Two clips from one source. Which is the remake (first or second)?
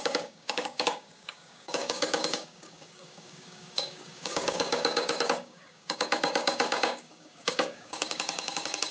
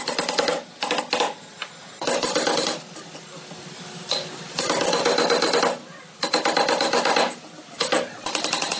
first